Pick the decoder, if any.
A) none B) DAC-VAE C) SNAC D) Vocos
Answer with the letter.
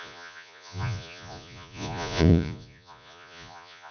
D